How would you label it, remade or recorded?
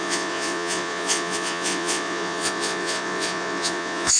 remade